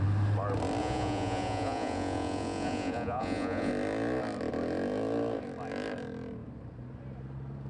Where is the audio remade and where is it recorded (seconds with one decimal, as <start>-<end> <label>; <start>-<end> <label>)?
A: 0.0-0.8 recorded; 0.8-3.7 remade; 3.7-7.7 recorded